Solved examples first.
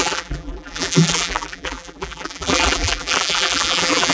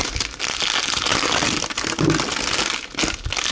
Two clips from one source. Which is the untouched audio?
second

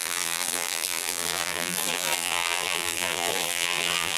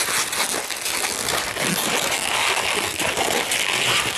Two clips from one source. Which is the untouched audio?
second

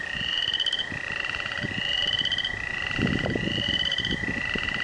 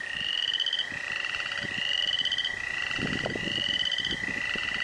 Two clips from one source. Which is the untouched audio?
second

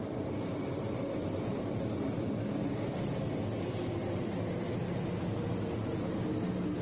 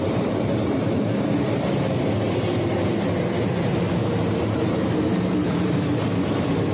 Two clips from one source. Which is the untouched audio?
first